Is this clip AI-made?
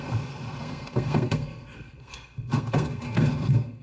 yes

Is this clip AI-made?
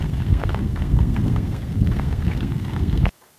yes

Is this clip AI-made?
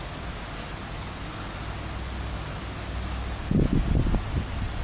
no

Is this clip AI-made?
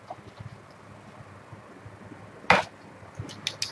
no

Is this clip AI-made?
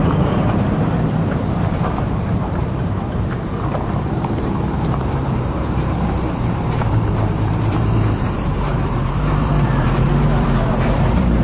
yes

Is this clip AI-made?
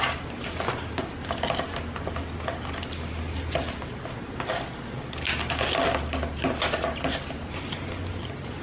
no